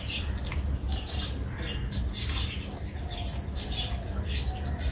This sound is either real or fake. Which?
real